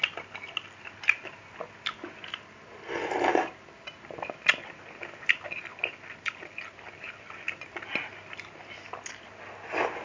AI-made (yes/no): no